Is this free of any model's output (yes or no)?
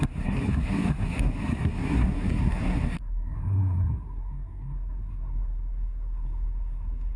no